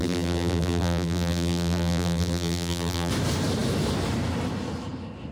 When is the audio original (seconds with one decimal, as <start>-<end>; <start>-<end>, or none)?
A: 3.1-5.3